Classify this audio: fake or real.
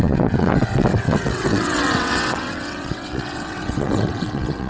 fake